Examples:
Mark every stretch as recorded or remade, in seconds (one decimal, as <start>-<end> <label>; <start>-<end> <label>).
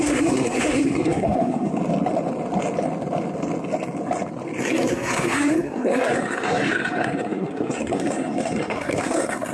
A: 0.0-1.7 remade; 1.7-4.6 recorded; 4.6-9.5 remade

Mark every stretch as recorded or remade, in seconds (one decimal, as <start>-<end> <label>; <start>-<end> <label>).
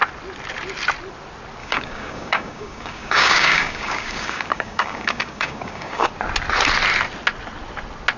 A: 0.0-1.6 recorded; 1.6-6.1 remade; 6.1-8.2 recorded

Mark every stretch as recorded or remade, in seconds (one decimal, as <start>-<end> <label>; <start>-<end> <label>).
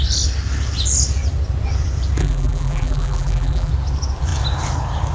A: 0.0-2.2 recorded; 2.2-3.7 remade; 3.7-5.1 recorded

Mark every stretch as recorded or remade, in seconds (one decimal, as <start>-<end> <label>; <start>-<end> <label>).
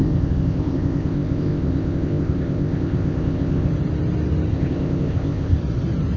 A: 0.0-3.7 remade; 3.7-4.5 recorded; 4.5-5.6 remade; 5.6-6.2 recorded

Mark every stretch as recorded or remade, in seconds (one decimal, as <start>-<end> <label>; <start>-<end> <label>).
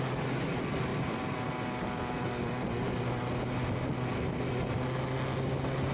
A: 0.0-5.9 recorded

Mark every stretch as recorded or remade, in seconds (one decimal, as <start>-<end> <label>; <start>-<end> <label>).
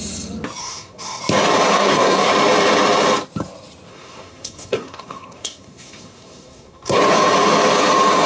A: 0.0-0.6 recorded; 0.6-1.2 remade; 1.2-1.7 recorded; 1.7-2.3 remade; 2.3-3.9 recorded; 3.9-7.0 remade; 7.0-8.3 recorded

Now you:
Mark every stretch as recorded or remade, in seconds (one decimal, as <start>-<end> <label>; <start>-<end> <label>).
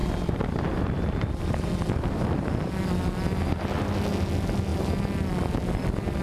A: 0.0-2.7 remade; 2.7-6.2 recorded